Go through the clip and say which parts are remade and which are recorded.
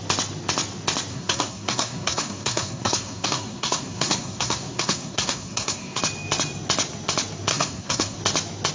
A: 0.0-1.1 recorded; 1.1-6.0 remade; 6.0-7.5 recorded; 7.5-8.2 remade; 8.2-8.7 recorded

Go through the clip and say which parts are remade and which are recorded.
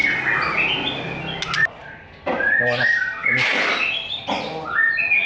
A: 0.0-1.8 recorded; 1.8-2.4 remade; 2.4-3.2 recorded; 3.2-4.2 remade; 4.2-5.3 recorded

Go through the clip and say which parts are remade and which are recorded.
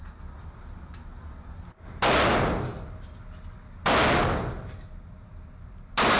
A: 0.0-6.2 recorded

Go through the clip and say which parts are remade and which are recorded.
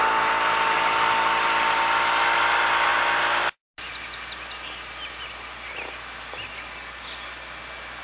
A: 0.0-8.0 recorded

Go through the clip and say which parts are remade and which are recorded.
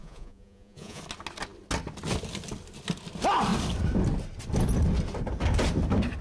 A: 0.0-1.0 remade; 1.0-6.2 recorded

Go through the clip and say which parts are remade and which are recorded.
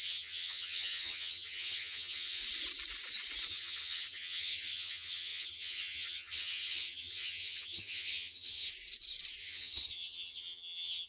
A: 0.0-2.4 remade; 2.4-3.5 recorded; 3.5-8.7 remade; 8.7-9.4 recorded; 9.4-11.1 remade